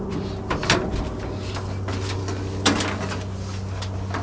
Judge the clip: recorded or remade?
recorded